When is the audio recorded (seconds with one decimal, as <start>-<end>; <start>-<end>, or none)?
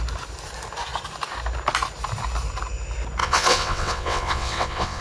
0.0-3.2